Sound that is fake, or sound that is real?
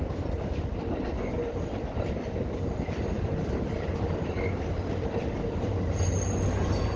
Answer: real